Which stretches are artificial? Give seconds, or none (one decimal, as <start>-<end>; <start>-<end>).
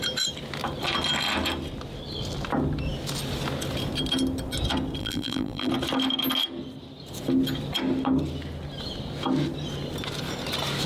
5.0-5.7